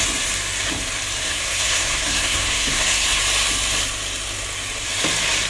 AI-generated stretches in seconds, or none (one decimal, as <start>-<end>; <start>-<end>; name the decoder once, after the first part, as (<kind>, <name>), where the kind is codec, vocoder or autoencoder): 1.2-3.2 (codec, SNAC)